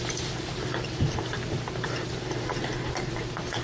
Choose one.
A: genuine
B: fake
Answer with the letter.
B